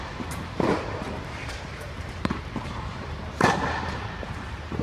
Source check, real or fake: fake